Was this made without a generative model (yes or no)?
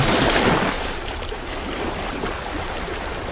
yes